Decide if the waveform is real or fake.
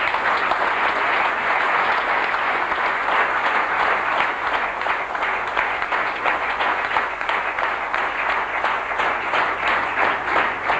fake